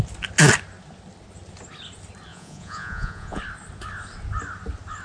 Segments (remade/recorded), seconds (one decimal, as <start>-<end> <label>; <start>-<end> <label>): 0.0-2.3 recorded; 2.3-3.4 remade; 3.4-5.0 recorded